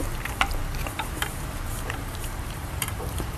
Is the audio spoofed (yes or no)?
yes